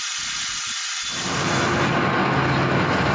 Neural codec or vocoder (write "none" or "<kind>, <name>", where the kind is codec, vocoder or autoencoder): none